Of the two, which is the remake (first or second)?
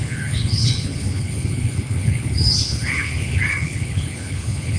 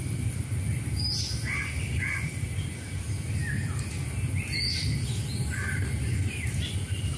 first